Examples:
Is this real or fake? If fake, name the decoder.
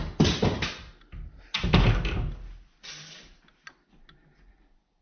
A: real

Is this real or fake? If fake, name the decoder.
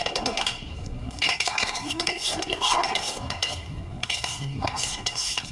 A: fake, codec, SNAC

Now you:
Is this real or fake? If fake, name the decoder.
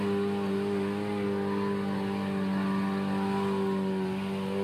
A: real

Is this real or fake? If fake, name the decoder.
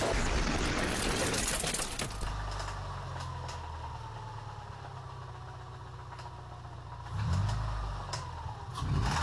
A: real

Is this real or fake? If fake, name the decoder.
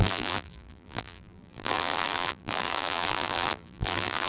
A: fake, vocoder, BigVGAN v2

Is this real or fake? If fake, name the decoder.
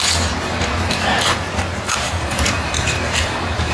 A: real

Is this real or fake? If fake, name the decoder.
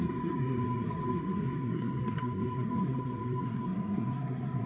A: fake, codec, SNAC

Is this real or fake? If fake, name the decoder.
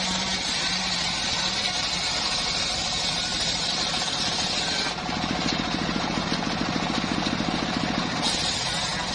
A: real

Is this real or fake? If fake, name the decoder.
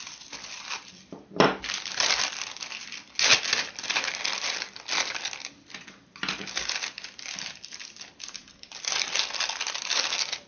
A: real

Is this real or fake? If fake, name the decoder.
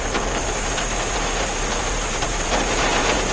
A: real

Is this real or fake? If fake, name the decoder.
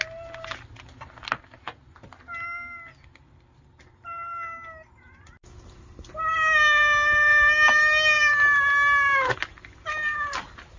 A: real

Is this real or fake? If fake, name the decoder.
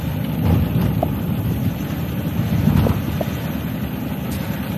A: real